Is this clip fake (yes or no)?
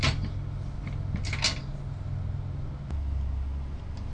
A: no